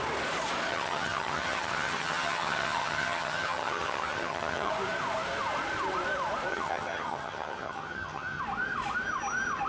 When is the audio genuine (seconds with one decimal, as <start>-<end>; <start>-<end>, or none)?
0.0-0.7; 4.7-6.5; 8.4-9.7